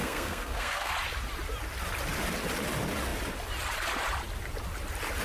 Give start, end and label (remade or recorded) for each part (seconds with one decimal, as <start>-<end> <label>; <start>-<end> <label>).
0.0-0.9 remade; 0.9-5.2 recorded